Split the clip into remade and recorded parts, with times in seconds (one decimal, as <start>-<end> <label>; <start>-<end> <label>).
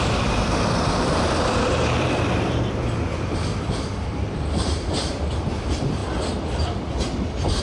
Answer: 0.0-6.0 remade; 6.0-7.6 recorded